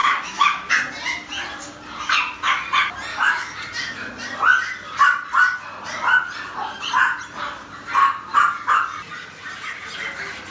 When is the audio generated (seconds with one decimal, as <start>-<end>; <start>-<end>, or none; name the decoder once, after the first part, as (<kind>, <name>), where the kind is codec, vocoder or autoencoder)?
0.0-0.7 (autoencoder, DAC-VAE); 3.1-3.6